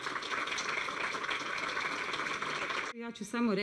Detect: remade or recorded recorded